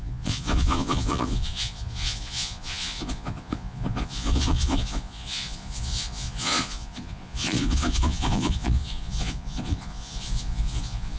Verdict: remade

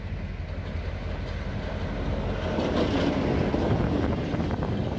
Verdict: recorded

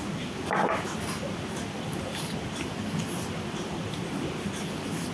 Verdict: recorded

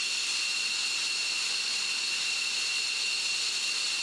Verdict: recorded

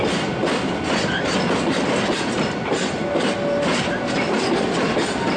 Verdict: recorded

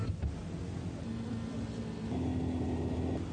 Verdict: recorded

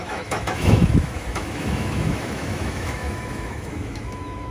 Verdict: remade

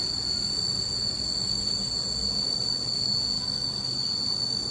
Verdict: recorded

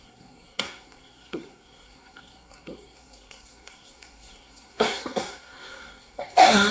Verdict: remade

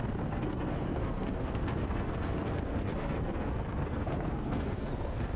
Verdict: remade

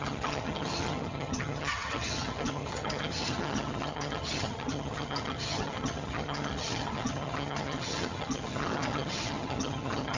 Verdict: remade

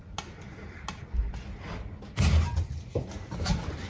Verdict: recorded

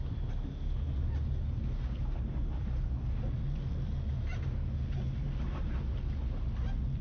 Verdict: recorded